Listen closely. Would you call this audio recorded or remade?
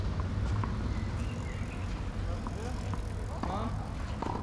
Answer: recorded